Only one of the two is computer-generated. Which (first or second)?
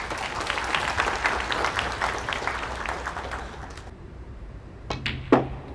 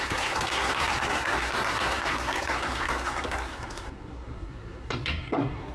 second